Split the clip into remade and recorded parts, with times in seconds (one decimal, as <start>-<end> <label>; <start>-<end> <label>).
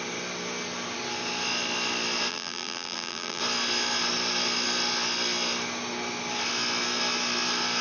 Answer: 0.0-2.3 recorded; 2.3-3.4 remade; 3.4-7.8 recorded